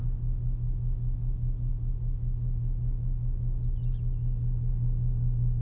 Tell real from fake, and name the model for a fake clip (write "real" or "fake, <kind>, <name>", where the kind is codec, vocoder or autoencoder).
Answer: real